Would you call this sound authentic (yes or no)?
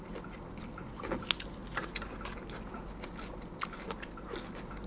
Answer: yes